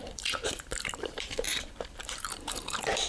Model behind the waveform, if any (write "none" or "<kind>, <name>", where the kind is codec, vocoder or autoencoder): vocoder, BigVGAN v2